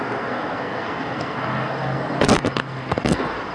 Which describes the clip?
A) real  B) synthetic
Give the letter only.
B